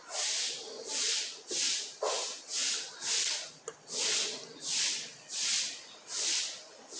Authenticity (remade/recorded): recorded